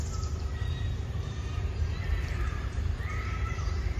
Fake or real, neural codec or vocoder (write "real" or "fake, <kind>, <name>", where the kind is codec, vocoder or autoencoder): fake, vocoder, BigVGAN v2